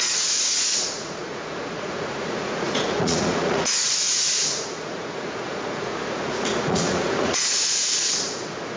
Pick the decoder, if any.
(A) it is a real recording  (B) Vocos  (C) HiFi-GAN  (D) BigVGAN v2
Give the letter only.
B